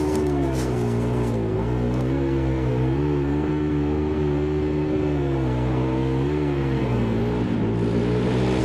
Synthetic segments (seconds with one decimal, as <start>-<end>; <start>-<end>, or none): 0.0-7.2